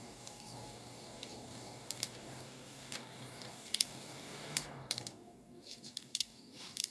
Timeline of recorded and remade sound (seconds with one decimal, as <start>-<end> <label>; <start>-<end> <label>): 0.0-6.9 remade